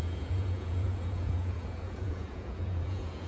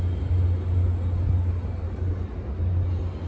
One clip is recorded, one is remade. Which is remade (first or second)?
first